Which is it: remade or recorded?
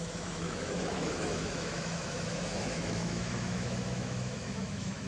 remade